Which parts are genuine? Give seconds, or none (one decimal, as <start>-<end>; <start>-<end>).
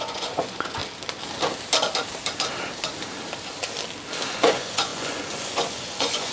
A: 0.8-4.3